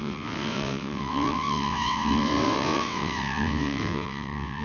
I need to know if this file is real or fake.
fake